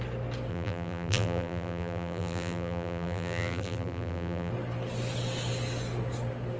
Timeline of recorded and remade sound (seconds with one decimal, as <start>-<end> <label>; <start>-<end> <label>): 0.0-0.5 recorded; 0.5-4.5 remade; 4.5-6.6 recorded